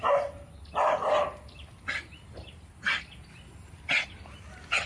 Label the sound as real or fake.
real